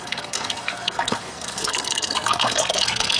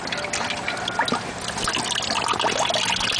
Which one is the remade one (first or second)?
first